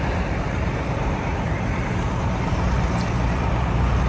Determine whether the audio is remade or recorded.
remade